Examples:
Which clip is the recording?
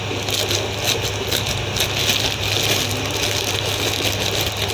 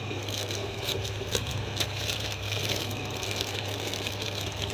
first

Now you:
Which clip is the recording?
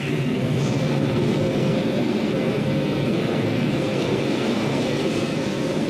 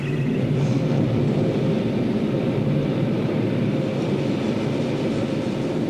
second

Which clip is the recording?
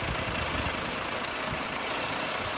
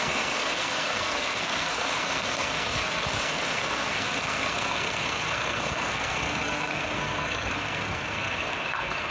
first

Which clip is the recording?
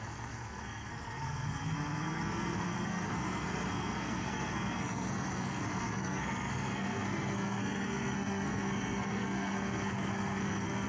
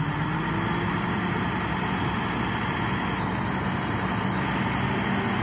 second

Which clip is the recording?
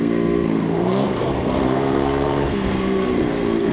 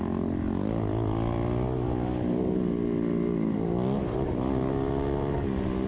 second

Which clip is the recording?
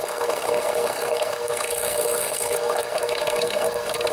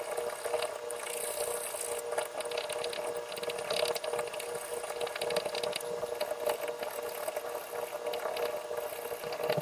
second